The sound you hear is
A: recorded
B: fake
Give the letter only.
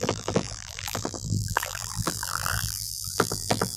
B